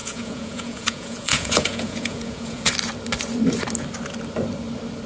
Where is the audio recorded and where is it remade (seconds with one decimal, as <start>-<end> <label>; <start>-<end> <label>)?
0.0-2.7 remade; 2.7-5.1 recorded